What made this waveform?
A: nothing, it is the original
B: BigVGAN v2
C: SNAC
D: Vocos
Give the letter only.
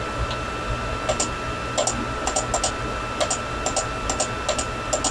A